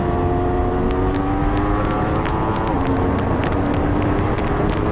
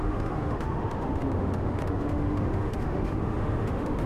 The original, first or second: first